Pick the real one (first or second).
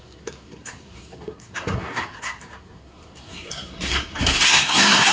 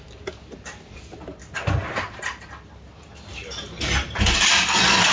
second